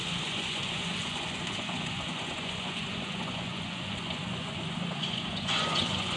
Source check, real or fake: fake